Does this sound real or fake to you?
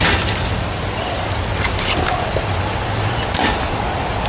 real